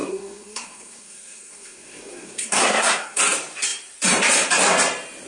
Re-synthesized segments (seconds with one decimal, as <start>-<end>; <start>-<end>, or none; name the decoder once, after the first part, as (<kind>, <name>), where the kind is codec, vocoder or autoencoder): 0.0-3.2 (codec, SNAC)